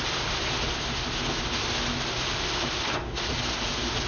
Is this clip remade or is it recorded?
recorded